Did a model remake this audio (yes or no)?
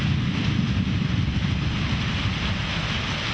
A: no